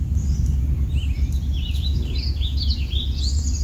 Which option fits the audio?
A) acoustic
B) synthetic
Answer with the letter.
A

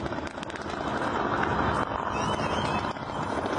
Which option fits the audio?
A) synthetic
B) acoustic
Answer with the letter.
B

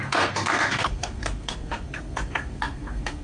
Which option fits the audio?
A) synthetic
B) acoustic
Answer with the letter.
A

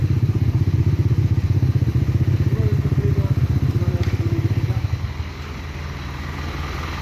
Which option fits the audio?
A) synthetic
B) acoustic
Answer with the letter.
B